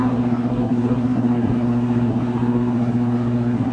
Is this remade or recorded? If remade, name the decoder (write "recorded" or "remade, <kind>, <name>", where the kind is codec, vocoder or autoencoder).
remade, codec, SNAC